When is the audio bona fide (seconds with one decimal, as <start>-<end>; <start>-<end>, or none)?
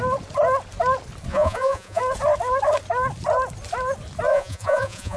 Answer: 0.0-1.3; 2.0-4.3